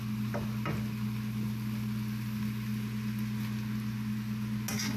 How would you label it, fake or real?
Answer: real